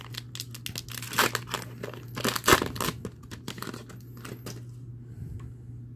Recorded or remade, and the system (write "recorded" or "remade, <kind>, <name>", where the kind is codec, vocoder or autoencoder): recorded